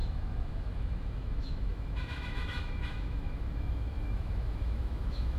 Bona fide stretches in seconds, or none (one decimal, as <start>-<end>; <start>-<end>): none

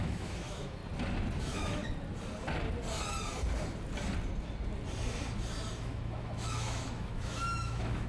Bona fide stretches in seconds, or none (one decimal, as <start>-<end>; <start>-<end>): 0.8-1.4; 1.8-5.8

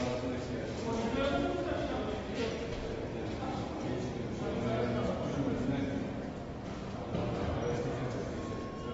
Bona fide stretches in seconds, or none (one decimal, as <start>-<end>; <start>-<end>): 0.0-8.9

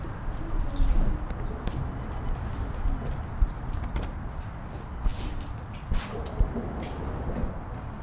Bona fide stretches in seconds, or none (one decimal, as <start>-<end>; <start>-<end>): 0.0-8.0

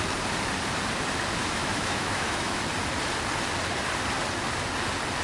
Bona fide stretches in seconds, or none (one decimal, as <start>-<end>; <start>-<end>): 0.0-1.4; 2.6-5.2